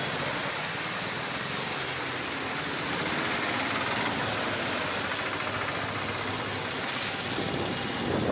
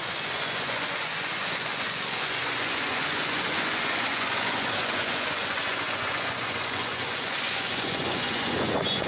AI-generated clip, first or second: second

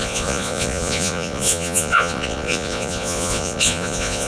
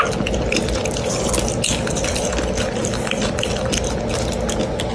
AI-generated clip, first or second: first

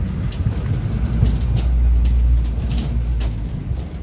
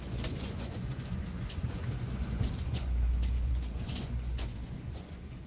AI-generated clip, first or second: second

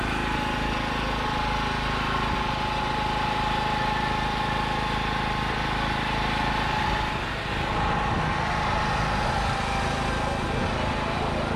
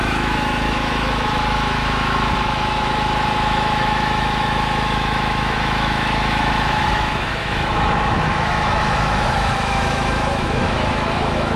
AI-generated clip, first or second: second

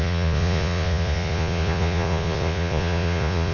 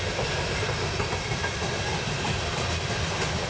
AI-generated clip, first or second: first